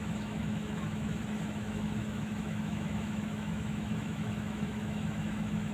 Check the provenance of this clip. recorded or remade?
remade